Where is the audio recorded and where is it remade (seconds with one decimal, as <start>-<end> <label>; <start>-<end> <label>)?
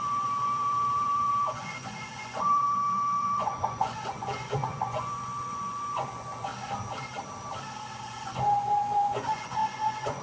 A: 0.0-6.5 remade; 6.5-8.0 recorded; 8.0-10.2 remade